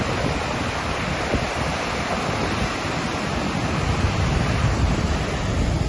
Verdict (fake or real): real